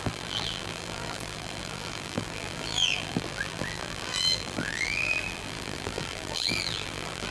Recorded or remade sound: remade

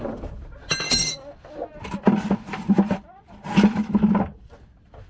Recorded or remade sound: remade